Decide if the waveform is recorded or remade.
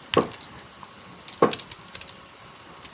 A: recorded